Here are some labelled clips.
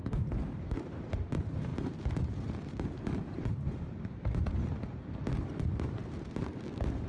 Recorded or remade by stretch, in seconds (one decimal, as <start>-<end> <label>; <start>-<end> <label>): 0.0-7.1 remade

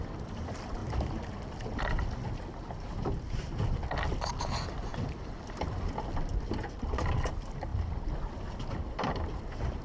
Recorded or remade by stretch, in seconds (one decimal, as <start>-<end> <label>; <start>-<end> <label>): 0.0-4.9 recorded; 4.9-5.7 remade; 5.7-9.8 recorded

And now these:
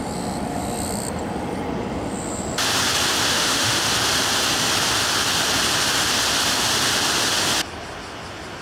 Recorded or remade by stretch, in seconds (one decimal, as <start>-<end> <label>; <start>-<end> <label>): 0.0-3.3 recorded; 3.3-3.9 remade; 3.9-8.6 recorded

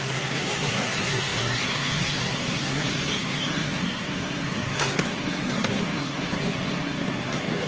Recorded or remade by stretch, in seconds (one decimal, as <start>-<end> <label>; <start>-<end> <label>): 0.0-7.7 remade